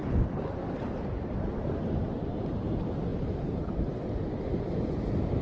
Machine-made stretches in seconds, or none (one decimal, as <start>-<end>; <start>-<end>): 1.5-5.4